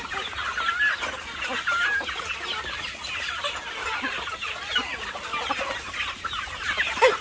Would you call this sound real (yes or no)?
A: yes